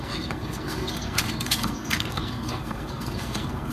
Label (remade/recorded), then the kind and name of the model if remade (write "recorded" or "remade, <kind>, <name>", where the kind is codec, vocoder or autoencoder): remade, codec, SNAC